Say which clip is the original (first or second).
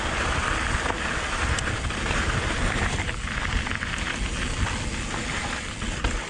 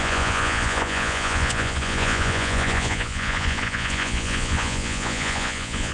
first